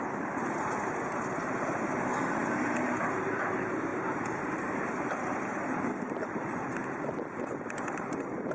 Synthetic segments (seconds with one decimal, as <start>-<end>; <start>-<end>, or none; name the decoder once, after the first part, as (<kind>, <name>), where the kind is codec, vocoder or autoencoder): 0.0-6.8 (vocoder, BigVGAN v2); 7.4-8.5